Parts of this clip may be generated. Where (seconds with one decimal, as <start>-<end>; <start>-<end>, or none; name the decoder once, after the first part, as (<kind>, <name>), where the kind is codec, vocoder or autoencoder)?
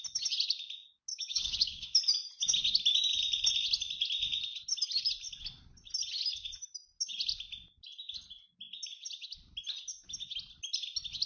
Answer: 1.1-2.0 (codec, DAC)